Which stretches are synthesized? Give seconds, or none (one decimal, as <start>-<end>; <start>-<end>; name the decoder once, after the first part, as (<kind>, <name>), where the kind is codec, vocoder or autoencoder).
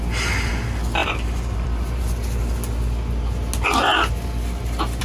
1.0-2.0 (vocoder, BigVGAN v2)